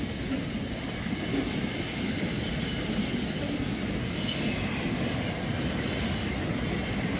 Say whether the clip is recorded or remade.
recorded